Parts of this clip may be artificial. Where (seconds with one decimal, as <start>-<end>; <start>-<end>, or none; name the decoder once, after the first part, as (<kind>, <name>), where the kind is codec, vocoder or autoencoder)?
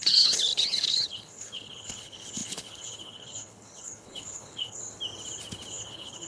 0.0-4.8 (codec, HILCodec); 5.7-6.3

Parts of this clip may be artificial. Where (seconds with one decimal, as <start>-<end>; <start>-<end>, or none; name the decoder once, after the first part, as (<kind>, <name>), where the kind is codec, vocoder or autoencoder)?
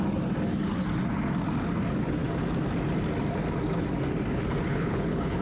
4.7-5.4 (codec, HILCodec)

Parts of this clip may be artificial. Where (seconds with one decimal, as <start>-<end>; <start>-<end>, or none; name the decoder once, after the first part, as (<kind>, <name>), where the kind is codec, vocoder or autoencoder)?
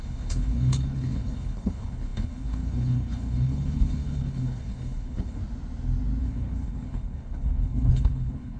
0.0-5.4 (codec, HILCodec); 6.2-8.6